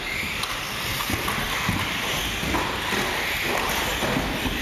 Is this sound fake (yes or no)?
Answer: no